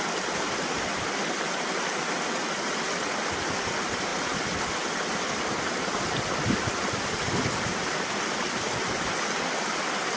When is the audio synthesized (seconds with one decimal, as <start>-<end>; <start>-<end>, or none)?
none

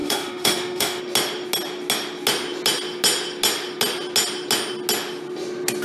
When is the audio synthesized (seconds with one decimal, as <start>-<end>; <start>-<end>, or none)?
0.0-1.0

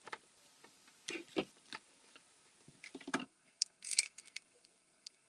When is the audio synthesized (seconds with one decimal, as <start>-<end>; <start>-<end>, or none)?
3.2-5.3

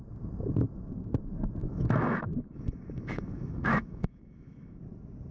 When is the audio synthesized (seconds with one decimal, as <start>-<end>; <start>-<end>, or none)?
1.6-4.8

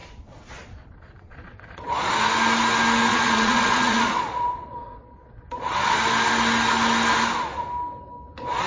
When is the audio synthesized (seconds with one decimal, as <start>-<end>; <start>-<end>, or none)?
0.0-2.1; 3.1-6.0